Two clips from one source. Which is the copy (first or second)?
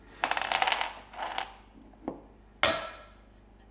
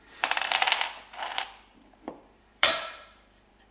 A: second